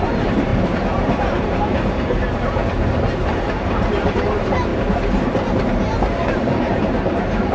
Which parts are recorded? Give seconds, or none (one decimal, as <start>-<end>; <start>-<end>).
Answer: 2.6-3.4; 4.7-5.5